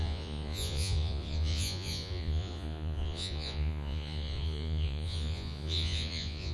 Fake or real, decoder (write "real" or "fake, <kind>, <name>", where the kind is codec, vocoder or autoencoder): fake, vocoder, Vocos